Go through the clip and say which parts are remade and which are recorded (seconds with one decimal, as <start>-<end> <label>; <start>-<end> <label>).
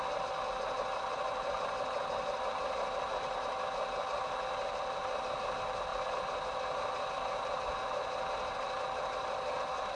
0.0-10.0 recorded